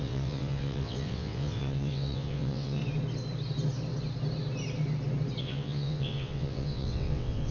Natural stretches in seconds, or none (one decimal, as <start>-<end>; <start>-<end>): 2.8-5.4